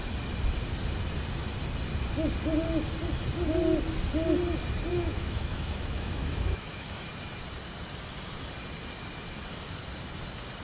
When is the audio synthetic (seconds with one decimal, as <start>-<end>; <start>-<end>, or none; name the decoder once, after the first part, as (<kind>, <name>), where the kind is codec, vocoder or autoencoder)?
4.9-7.1 (autoencoder, DAC-VAE)